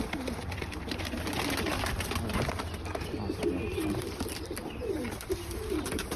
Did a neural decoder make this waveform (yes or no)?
yes